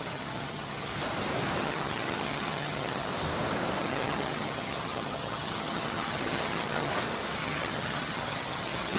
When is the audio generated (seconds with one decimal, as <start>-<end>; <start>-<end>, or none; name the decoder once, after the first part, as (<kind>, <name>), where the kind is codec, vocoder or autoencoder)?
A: 0.0-0.9 (vocoder, HiFi-GAN); 1.6-3.1; 3.8-6.9; 7.4-9.0